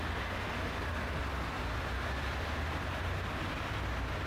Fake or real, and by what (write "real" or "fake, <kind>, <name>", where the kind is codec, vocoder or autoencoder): real